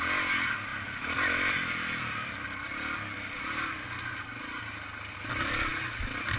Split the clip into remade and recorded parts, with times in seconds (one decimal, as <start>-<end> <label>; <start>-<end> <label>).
0.0-0.7 recorded; 0.7-3.4 remade; 3.4-6.4 recorded